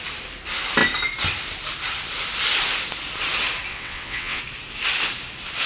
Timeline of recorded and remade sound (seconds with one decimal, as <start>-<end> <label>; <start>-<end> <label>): 0.0-3.7 recorded; 3.7-4.4 remade; 4.4-5.7 recorded